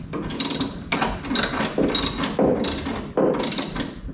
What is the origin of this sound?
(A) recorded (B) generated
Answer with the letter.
A